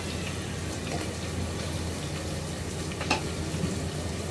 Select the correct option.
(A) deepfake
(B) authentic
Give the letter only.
B